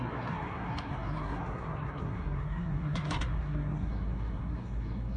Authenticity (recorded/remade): remade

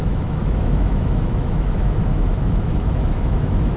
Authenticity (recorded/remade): remade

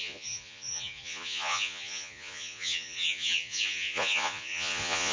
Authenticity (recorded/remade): remade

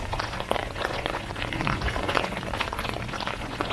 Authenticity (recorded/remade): remade